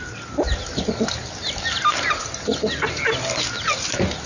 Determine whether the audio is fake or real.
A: real